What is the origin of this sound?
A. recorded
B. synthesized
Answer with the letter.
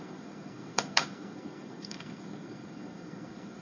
B